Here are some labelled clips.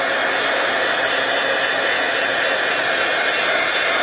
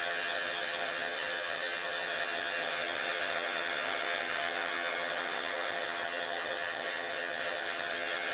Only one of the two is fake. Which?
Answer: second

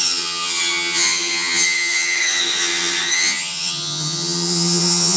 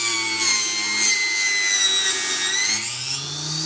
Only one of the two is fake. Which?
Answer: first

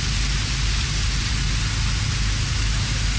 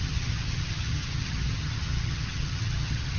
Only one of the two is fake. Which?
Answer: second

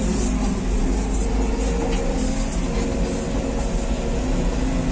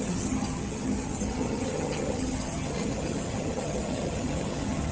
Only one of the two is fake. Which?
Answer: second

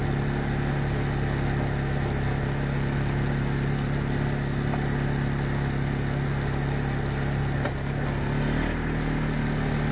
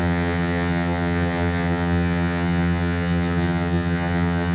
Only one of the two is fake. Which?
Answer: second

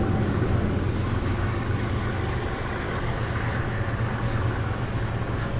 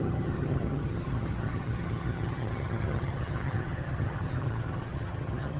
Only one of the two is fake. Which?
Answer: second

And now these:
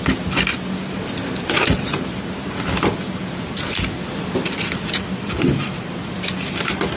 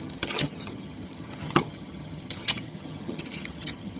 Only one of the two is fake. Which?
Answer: second